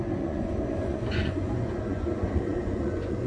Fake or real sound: fake